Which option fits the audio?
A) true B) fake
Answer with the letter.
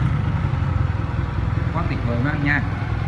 A